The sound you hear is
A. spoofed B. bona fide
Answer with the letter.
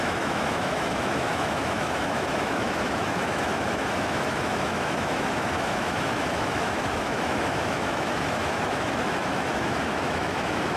A